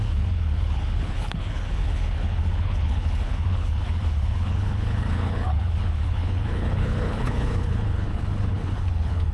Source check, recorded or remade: remade